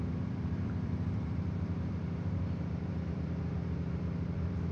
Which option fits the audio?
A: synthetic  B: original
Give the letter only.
A